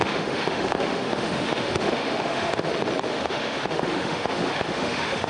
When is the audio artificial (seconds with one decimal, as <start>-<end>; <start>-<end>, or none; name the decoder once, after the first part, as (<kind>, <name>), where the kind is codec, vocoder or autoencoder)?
0.0-2.7 (autoencoder, DAC-VAE); 3.1-5.3